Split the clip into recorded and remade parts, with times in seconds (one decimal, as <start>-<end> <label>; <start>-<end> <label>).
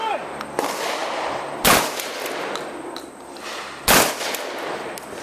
0.0-5.2 recorded